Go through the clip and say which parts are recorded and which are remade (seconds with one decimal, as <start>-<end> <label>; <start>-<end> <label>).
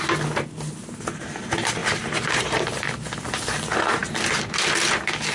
0.0-1.8 recorded; 1.8-2.5 remade; 2.5-5.3 recorded